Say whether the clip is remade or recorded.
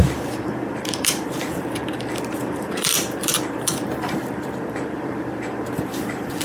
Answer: remade